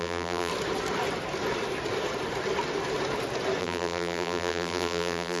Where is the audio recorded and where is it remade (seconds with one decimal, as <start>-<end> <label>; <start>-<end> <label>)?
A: 0.0-0.5 remade; 0.5-3.6 recorded; 3.6-5.4 remade